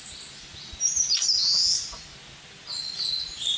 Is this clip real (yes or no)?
yes